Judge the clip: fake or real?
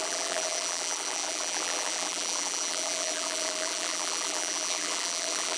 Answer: fake